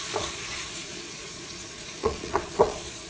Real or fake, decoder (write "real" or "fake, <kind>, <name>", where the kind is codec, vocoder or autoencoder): fake, vocoder, Vocos